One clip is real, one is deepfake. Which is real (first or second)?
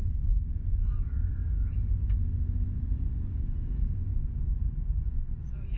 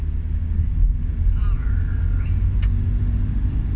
second